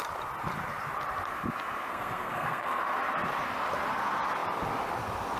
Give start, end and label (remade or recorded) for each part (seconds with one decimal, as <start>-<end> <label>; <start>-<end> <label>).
0.0-1.9 recorded; 1.9-2.8 remade; 2.8-5.4 recorded